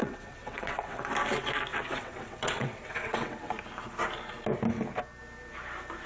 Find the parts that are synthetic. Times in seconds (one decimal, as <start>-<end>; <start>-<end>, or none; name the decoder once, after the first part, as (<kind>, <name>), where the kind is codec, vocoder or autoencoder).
0.0-1.1 (vocoder, WaveNeXt); 1.7-3.5